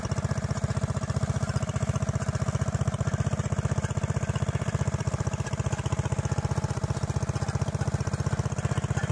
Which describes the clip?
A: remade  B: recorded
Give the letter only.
A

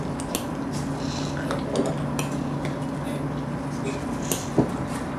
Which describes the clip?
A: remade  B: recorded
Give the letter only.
B